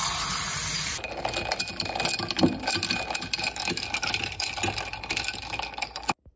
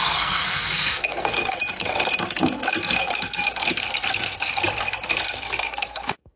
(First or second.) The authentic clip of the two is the first